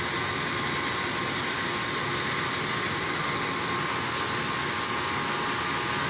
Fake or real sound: real